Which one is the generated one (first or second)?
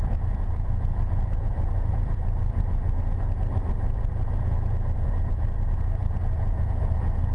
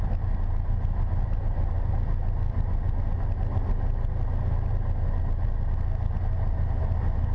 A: first